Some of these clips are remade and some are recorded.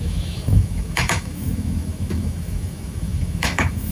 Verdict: remade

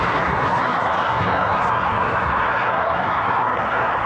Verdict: remade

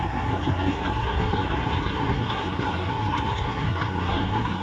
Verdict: remade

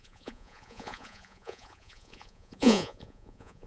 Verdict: remade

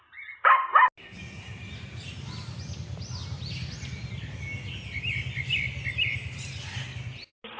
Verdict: recorded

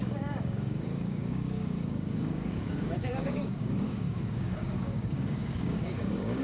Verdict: remade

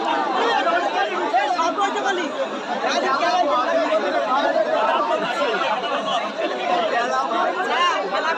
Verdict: remade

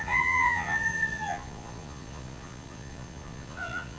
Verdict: remade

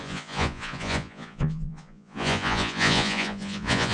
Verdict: remade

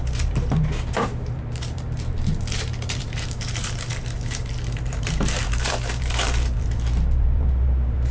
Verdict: remade